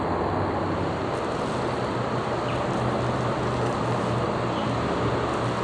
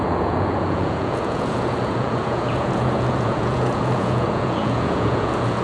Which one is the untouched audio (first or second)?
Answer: first